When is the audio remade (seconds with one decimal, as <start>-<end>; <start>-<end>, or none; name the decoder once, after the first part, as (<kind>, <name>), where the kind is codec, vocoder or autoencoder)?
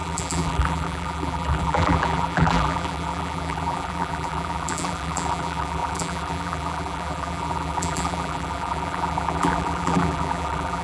0.0-10.8 (vocoder, BigVGAN v2)